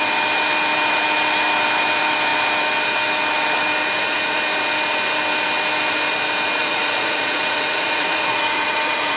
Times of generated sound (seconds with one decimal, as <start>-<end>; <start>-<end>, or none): 6.6-9.2